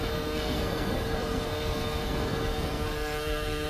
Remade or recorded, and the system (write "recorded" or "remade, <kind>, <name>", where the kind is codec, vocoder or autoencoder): remade, codec, SNAC